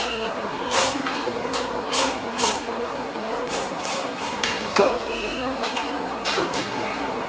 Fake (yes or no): yes